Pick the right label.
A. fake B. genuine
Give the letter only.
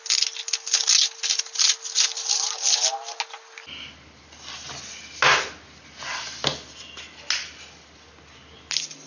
B